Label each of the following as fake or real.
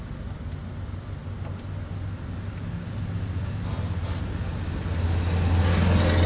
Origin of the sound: real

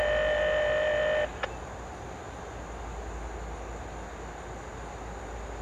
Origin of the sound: real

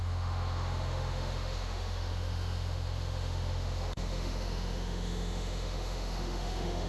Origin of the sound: fake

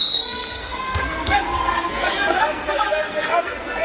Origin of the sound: fake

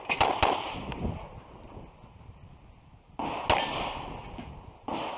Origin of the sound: real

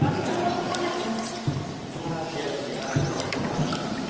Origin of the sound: real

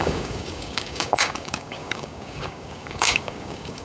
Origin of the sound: fake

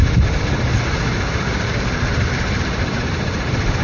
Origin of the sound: real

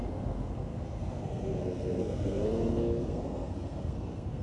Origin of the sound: fake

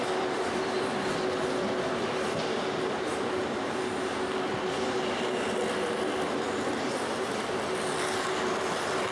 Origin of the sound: real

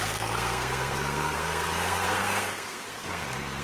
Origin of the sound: fake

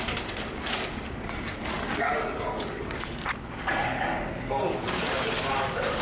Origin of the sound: fake